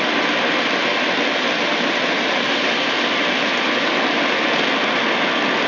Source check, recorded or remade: recorded